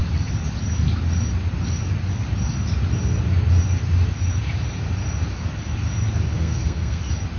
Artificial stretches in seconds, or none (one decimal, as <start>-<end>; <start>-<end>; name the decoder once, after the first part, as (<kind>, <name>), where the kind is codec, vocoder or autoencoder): 6.3-7.0 (codec, SNAC)